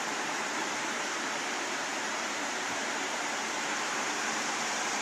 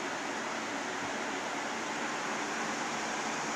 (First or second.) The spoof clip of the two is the first